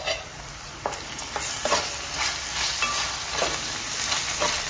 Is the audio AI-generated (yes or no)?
no